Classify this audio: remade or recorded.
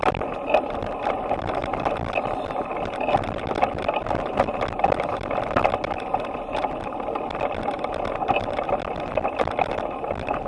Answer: recorded